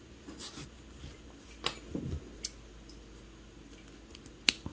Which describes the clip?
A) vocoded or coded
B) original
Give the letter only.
B